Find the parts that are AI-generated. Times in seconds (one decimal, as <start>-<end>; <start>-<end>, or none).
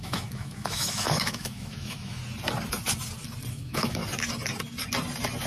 0.0-2.2; 3.5-4.0